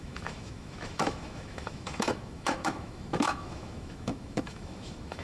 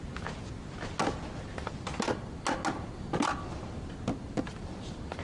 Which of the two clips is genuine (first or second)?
second